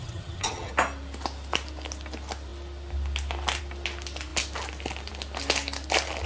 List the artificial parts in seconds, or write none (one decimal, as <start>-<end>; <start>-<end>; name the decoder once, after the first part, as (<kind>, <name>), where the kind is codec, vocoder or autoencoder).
0.0-0.7 (vocoder, HiFi-GAN)